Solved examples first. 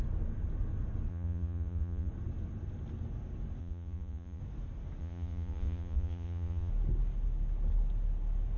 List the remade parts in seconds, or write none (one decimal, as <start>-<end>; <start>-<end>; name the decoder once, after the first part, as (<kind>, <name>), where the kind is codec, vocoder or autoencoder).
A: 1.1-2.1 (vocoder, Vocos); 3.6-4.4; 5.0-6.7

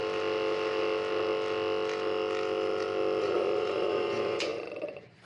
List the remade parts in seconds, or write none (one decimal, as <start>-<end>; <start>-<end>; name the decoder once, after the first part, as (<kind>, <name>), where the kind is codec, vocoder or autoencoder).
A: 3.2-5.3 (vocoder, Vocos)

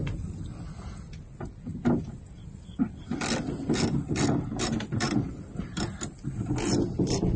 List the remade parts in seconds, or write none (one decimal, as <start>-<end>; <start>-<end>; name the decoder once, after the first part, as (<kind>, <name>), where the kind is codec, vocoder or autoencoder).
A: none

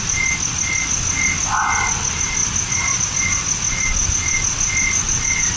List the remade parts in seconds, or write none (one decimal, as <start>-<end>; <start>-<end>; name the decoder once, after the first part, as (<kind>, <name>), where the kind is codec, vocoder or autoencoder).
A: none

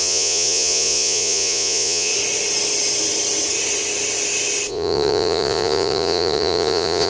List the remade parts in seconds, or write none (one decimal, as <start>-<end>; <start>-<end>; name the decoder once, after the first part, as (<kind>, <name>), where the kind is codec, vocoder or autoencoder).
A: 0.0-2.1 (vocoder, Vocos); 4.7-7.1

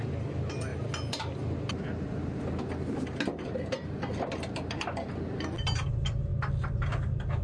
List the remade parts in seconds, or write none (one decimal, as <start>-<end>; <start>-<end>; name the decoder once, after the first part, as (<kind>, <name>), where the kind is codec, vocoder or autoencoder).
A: none